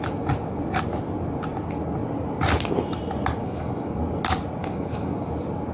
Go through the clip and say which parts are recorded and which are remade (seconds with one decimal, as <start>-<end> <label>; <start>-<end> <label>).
0.0-3.4 recorded; 3.4-4.0 remade; 4.0-4.6 recorded; 4.6-5.3 remade; 5.3-5.7 recorded